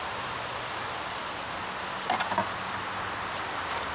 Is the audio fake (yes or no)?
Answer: no